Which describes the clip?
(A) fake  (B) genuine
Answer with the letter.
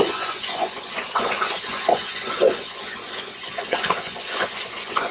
A